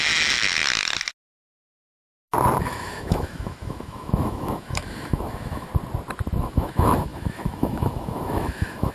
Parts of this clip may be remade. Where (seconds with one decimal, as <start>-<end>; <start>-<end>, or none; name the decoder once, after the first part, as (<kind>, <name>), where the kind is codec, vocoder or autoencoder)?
0.0-0.6 (autoencoder, DAC-VAE); 2.6-5.7; 6.4-8.9